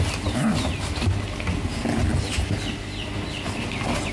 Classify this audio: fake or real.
real